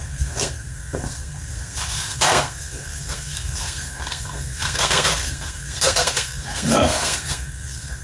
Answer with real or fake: fake